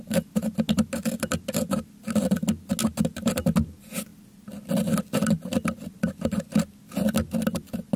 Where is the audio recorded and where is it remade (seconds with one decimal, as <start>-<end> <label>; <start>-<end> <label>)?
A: 0.0-8.0 recorded